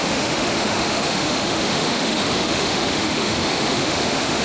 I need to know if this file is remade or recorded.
remade